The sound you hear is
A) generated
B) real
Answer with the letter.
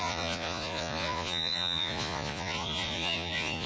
A